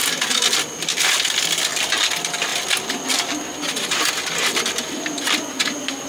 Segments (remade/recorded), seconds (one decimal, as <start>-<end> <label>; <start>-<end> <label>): 0.0-6.1 recorded